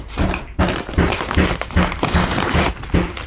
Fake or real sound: fake